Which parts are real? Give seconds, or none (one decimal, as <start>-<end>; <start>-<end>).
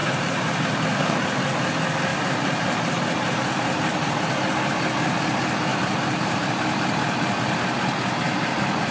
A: 0.6-2.1; 3.8-5.7; 6.5-8.9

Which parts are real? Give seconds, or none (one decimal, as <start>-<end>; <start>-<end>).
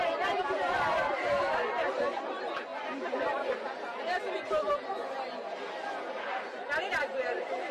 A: 2.7-6.9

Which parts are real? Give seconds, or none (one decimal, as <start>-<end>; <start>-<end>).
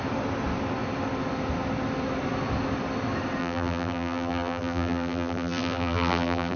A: 0.0-3.4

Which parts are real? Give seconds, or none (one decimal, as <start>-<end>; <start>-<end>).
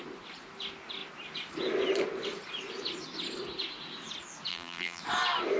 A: 0.0-4.5; 5.0-5.6